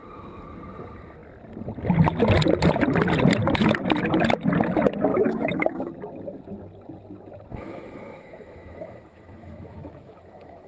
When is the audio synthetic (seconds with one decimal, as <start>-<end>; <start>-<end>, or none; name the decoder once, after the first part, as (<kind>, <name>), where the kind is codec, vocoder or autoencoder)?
5.1-5.9 (autoencoder, DAC-VAE); 7.5-10.7

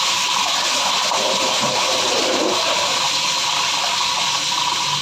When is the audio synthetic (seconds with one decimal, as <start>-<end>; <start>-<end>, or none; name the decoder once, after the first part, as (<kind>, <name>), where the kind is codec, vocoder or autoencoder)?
none

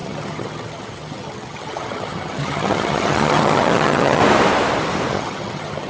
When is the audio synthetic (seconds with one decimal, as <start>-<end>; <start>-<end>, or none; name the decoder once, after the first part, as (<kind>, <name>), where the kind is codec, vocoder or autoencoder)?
0.0-4.2 (vocoder, HiFi-GAN); 5.1-5.9

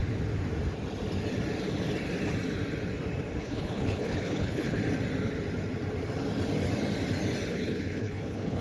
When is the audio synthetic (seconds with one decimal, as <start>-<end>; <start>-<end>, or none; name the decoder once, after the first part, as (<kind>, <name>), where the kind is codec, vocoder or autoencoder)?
3.4-4.8 (codec, HILCodec); 7.5-8.6

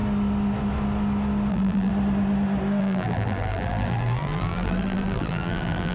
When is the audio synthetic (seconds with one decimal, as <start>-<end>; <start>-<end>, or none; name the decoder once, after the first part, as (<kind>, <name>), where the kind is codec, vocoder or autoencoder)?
1.5-1.9 (vocoder, BigVGAN v2); 2.8-5.9

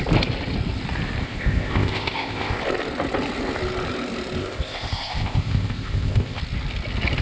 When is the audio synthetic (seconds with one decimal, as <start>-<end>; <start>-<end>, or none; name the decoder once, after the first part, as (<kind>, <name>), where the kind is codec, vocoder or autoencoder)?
1.2-2.6 (codec, ZipCodec); 4.4-6.4